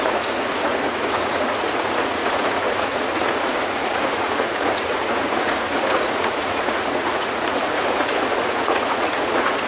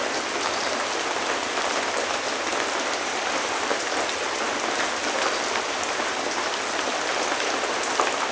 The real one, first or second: second